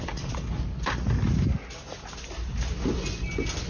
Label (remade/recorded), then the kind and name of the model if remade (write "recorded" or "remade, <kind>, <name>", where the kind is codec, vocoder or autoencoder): recorded